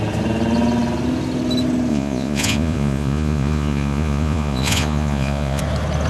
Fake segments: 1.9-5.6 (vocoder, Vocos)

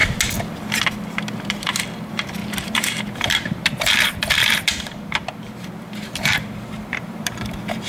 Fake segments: 1.3-7.9 (vocoder, BigVGAN v2)

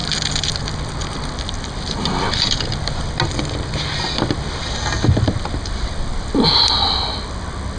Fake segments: none

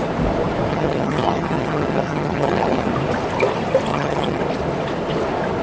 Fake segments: 0.7-2.9 (vocoder, HiFi-GAN); 3.9-4.4

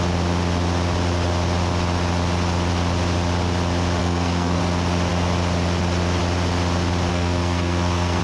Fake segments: 4.0-4.6 (codec, SNAC); 7.1-8.2

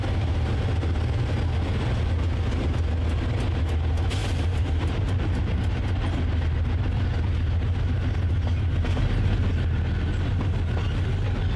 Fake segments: 4.2-5.8 (vocoder, BigVGAN v2)

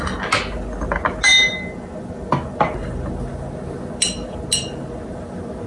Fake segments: none